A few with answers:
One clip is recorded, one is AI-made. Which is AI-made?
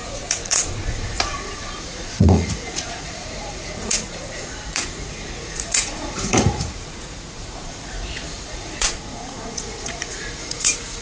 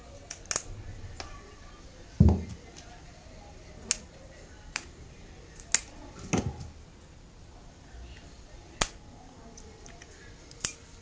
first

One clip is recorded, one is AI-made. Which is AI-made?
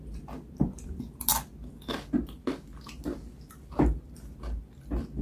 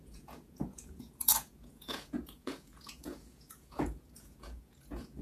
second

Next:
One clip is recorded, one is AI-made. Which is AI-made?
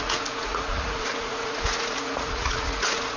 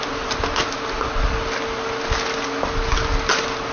first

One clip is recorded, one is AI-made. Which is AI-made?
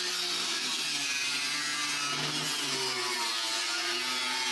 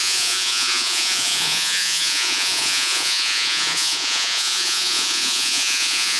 second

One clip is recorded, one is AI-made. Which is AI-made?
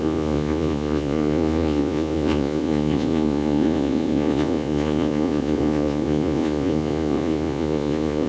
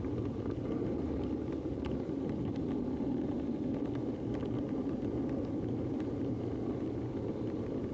first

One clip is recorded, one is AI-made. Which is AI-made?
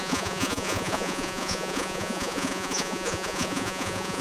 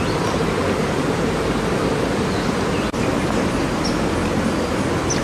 first